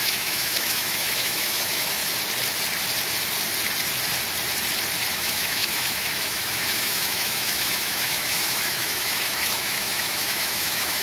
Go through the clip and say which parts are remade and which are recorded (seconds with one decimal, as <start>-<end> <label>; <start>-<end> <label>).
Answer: 0.0-2.0 remade; 2.0-5.1 recorded; 5.1-11.0 remade